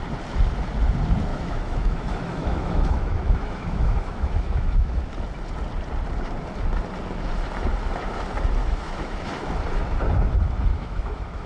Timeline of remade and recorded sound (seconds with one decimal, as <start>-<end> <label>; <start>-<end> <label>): 0.0-1.3 recorded; 1.3-5.0 remade; 5.0-8.6 recorded; 8.6-9.5 remade; 9.5-10.7 recorded; 10.7-11.5 remade